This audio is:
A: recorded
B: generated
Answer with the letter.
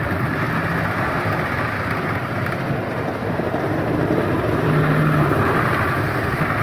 A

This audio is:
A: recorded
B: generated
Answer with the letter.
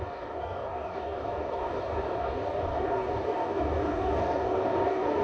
B